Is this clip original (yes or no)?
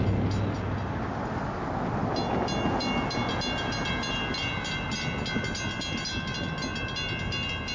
yes